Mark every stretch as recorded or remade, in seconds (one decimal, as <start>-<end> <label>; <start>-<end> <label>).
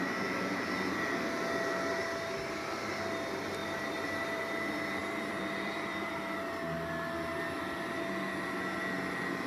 0.0-3.6 recorded; 3.6-4.4 remade; 4.4-5.0 recorded; 5.0-6.1 remade; 6.1-9.5 recorded